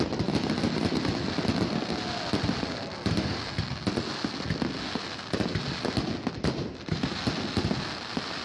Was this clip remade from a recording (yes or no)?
no